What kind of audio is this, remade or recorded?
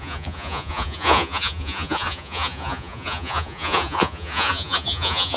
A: remade